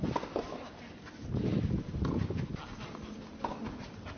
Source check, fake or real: real